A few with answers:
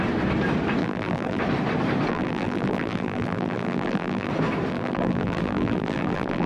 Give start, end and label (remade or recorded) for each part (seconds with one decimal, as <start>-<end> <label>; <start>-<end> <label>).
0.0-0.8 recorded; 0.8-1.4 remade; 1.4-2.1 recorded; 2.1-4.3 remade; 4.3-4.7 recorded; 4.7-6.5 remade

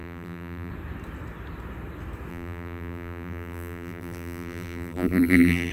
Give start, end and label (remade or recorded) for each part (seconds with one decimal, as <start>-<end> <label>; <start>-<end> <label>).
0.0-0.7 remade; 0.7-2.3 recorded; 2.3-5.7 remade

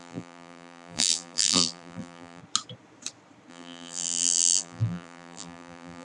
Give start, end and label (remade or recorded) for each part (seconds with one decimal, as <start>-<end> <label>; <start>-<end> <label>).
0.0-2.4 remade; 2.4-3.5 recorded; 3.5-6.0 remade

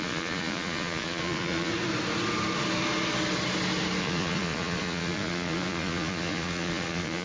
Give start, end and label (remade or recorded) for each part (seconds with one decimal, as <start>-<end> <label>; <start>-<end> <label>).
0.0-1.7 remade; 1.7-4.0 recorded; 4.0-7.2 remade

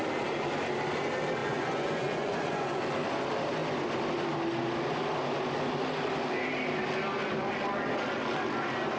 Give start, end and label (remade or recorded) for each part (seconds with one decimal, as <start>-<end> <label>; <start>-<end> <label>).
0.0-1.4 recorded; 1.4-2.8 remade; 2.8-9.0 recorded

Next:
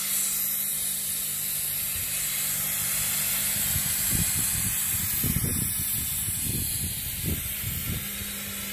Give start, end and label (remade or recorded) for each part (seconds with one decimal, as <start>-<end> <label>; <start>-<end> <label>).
0.0-8.7 recorded

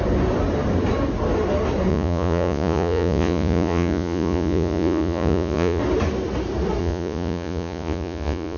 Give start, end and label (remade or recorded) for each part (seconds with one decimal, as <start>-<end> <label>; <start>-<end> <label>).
0.0-1.9 recorded; 1.9-5.8 remade; 5.8-6.8 recorded; 6.8-8.6 remade